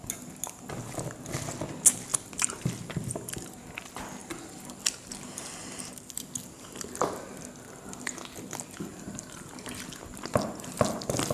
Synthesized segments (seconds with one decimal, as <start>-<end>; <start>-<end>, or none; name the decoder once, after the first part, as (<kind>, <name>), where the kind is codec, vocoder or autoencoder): 2.1-3.6 (vocoder, BigVGAN v2); 4.2-5.8; 8.9-10.0